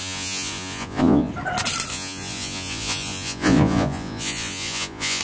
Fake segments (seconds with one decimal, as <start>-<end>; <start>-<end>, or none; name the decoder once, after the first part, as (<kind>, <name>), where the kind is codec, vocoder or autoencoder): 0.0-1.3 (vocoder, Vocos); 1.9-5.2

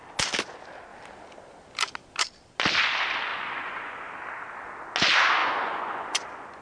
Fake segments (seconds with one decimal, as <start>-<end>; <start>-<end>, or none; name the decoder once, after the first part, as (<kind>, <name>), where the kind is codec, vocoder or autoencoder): 3.3-4.1 (vocoder, Vocos); 5.4-6.6

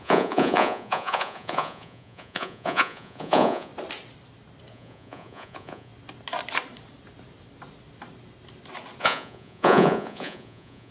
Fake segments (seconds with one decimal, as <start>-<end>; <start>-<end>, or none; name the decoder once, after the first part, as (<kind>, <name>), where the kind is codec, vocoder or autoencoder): 0.0-3.7 (vocoder, Vocos); 4.7-5.9; 9.0-10.9

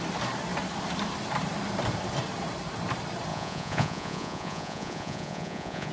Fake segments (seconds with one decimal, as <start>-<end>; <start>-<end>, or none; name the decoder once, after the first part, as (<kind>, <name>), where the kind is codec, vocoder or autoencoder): 3.3-5.9 (vocoder, Vocos)

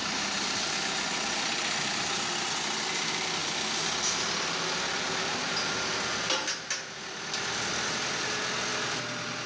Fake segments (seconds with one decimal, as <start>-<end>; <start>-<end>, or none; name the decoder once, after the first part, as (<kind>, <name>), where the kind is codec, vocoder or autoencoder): none

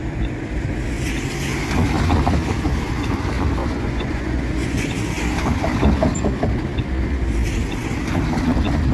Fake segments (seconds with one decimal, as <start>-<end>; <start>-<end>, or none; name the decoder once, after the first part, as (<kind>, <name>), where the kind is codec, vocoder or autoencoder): 3.6-4.9 (vocoder, Vocos)